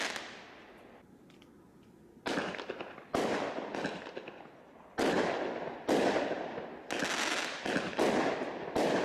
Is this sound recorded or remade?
recorded